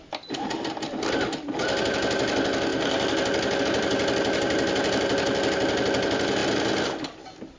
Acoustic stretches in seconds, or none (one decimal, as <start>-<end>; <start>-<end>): 0.0-7.6